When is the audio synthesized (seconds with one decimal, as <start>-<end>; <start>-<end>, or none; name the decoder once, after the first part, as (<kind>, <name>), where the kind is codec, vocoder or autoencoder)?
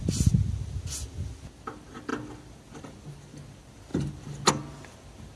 none